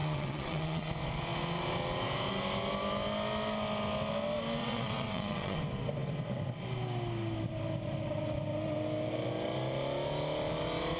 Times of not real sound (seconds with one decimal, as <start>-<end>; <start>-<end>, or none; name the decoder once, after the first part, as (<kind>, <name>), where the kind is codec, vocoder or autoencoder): 0.0-0.9 (vocoder, WaveNeXt); 4.6-5.6